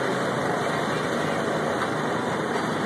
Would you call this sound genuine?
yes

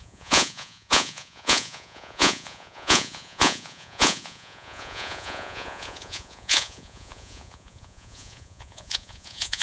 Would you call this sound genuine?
no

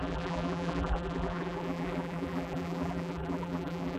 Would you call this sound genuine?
no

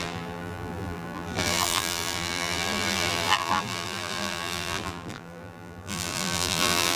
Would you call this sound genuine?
no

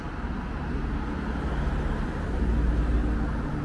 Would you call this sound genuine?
yes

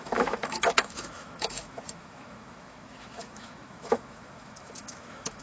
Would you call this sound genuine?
no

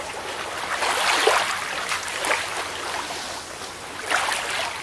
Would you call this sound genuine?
yes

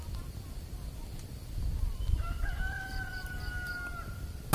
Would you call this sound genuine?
yes